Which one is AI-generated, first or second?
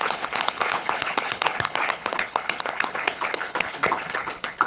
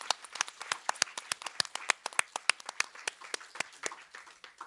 first